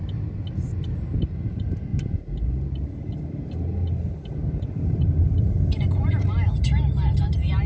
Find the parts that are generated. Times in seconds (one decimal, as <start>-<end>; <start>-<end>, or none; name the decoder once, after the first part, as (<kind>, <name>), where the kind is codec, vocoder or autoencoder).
none